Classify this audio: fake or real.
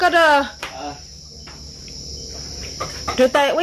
real